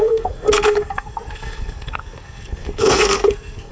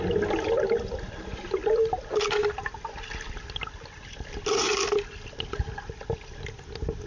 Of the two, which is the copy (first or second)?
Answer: first